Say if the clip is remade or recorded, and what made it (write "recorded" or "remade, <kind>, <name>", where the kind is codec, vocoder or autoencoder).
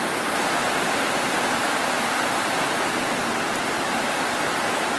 recorded